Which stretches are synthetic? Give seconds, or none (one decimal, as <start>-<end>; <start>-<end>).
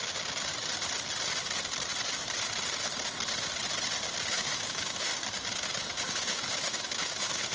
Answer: 4.3-5.1; 6.1-7.5